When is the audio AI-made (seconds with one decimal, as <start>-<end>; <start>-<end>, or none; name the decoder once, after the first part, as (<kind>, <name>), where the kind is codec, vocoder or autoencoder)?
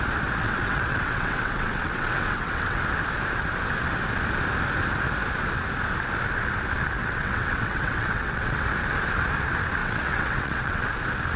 0.4-2.8 (vocoder, WaveNeXt); 7.0-8.7; 9.8-10.8